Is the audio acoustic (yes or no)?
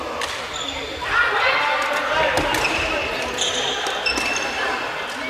yes